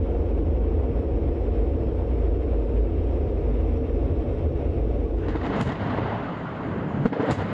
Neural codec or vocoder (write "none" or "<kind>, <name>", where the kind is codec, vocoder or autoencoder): vocoder, BigVGAN v2